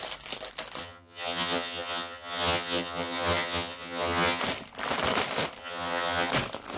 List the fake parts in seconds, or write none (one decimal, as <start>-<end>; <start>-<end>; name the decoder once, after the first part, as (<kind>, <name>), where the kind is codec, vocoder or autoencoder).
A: 0.8-4.4 (vocoder, HiFi-GAN); 5.6-6.3